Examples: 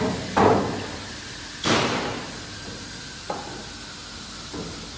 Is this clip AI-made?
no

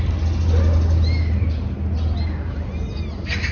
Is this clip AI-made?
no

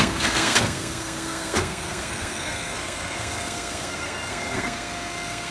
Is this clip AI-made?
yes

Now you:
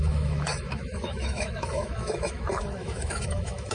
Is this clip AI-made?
yes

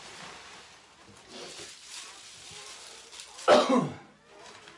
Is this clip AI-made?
no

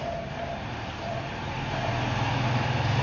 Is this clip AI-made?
no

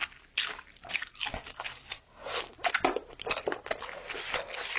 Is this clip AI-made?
no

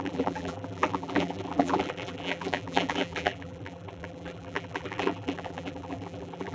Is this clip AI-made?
yes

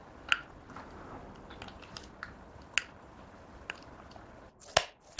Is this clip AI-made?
no